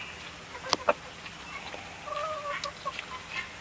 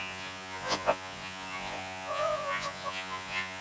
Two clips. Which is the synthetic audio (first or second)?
second